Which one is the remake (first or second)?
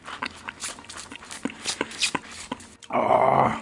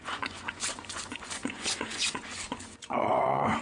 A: second